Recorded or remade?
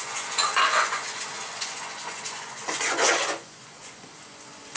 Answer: remade